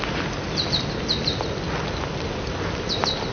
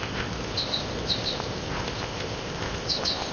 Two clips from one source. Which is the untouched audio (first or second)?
first